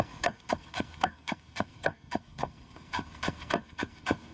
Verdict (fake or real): fake